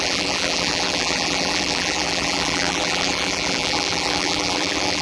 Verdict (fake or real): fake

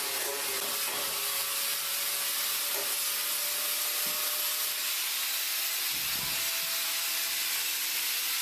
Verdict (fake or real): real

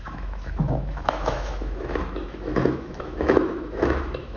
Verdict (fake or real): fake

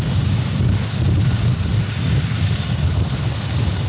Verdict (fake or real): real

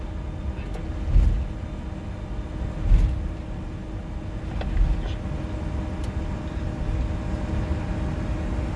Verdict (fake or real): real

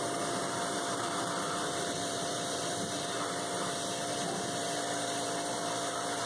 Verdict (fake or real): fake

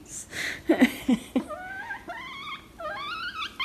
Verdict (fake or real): real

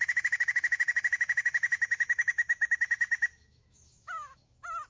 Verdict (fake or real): fake